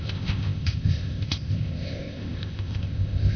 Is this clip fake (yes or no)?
yes